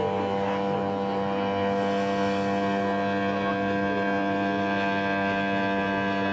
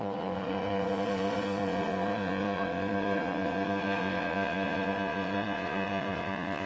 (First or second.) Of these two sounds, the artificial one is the second